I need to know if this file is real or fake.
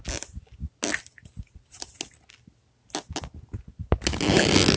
real